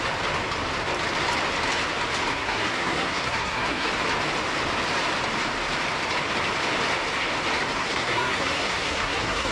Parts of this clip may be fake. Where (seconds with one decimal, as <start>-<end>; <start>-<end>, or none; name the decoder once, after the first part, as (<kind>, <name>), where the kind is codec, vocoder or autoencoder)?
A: 2.3-3.9 (codec, SNAC); 7.8-9.5